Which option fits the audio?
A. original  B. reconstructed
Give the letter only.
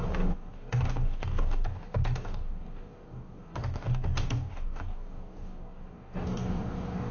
B